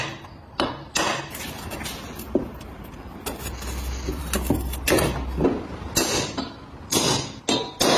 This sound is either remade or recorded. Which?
recorded